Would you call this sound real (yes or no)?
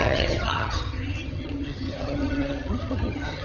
no